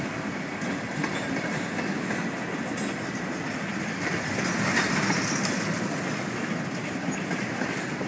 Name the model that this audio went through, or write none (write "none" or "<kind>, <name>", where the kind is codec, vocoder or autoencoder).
none